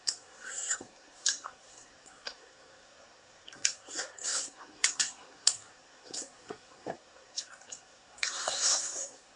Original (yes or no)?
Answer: no